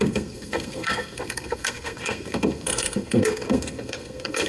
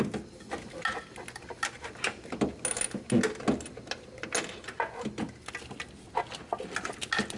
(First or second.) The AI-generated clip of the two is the first